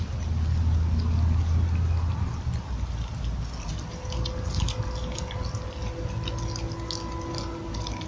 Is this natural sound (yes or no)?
yes